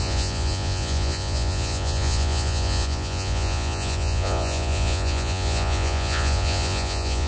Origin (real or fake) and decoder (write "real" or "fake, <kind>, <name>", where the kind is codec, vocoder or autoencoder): fake, vocoder, Vocos